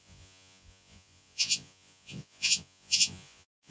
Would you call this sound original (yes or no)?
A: no